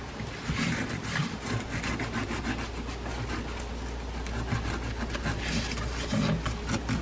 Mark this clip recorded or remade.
recorded